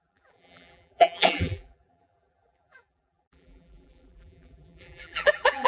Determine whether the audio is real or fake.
fake